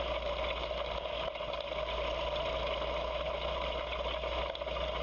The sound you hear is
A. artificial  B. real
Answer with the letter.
B